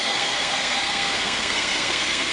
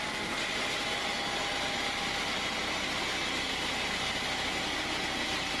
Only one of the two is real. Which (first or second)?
second